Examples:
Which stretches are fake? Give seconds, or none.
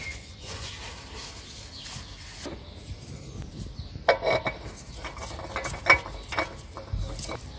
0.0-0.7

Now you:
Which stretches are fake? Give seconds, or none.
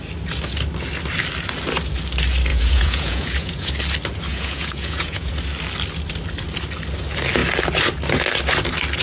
2.5-3.7; 4.3-5.3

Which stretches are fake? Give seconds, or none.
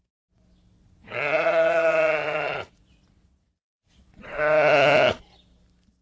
0.8-4.4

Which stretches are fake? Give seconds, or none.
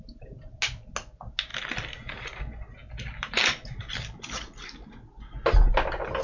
none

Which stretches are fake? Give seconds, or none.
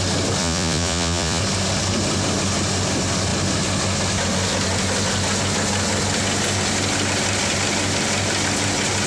0.4-1.4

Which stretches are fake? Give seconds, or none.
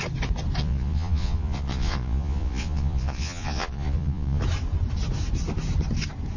0.6-4.4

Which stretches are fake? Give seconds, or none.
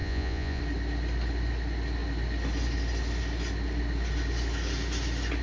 0.0-0.6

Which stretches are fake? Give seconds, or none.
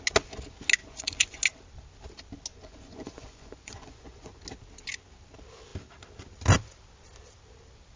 0.8-1.4; 2.5-4.4